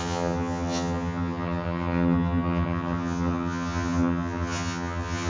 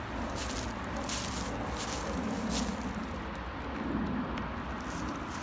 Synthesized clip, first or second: first